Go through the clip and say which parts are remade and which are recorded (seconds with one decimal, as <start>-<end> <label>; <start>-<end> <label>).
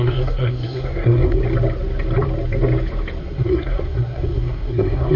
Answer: 0.0-1.4 remade; 1.4-3.2 recorded; 3.2-5.2 remade